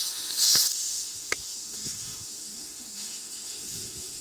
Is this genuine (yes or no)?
no